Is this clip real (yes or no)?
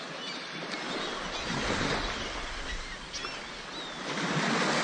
yes